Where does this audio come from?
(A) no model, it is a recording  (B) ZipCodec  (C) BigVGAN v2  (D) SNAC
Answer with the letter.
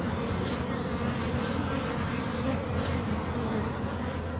A